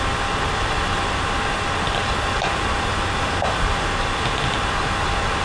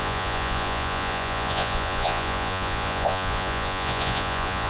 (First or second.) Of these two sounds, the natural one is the first